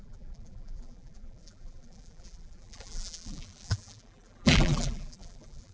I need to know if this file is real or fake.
fake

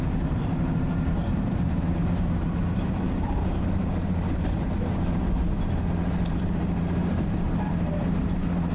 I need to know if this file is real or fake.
fake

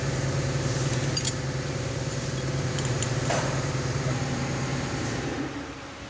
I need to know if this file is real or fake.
fake